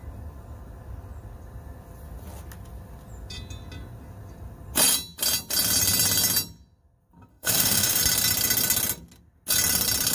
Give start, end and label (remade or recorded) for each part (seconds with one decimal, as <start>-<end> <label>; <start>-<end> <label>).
0.0-7.3 recorded; 7.3-8.0 remade; 8.0-10.1 recorded